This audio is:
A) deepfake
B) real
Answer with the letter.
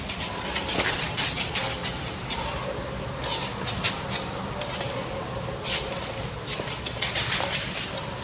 B